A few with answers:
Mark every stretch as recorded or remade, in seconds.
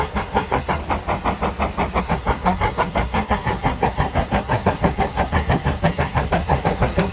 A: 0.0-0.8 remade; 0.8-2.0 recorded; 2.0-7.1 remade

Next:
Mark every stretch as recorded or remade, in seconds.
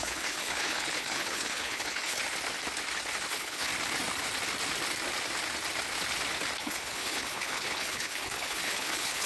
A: 0.0-2.2 remade; 2.2-3.3 recorded; 3.3-3.7 remade; 3.7-6.6 recorded; 6.6-9.3 remade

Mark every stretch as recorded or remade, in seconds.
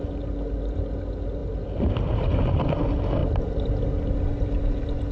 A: 0.0-5.1 recorded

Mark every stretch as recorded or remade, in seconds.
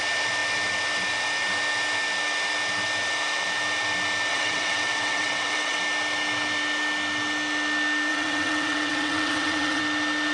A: 0.0-4.3 recorded; 4.3-5.8 remade; 5.8-8.1 recorded; 8.1-9.8 remade; 9.8-10.3 recorded